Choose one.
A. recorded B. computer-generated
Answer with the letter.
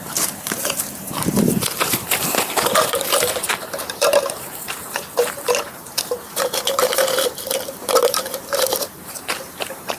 B